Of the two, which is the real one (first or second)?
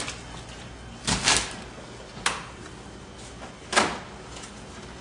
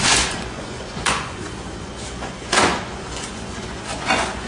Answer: first